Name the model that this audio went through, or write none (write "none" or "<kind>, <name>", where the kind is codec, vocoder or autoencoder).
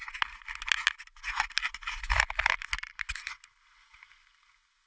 none